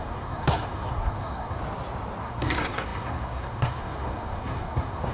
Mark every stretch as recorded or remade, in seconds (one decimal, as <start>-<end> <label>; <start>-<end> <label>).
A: 0.0-1.6 remade; 1.6-2.2 recorded; 2.2-5.1 remade